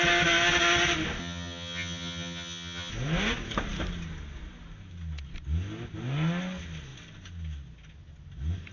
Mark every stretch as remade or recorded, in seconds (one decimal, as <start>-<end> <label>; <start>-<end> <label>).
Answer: 0.0-1.2 recorded; 1.2-2.9 remade; 2.9-8.7 recorded